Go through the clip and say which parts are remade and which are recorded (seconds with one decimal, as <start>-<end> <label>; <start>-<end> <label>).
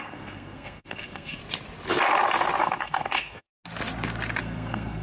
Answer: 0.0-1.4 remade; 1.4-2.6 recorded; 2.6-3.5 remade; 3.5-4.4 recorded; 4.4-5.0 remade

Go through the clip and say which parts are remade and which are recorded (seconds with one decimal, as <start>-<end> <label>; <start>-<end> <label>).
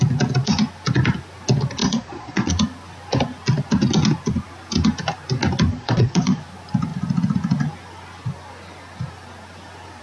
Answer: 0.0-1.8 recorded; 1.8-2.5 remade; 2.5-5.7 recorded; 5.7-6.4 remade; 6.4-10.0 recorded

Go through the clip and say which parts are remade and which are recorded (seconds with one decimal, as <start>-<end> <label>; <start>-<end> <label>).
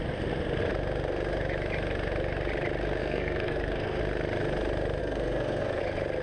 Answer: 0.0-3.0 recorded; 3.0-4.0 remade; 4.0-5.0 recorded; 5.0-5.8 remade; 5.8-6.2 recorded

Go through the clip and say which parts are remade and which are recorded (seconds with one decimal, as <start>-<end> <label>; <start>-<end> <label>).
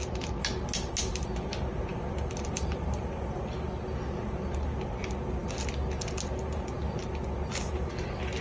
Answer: 0.0-1.9 recorded; 1.9-3.4 remade; 3.4-8.4 recorded